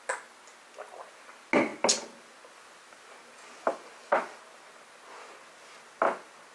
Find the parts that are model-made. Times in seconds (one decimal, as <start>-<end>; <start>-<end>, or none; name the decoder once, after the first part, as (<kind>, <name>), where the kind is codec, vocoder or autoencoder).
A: none